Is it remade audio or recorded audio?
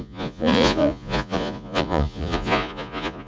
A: remade